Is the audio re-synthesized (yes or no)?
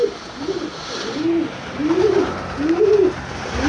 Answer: no